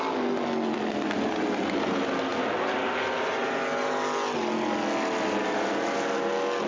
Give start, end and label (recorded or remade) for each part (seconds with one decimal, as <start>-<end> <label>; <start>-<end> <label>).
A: 0.0-6.7 recorded